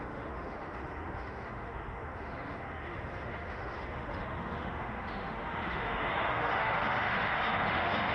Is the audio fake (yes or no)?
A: yes